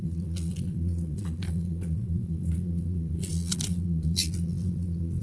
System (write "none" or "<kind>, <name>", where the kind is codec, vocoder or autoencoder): vocoder, Vocos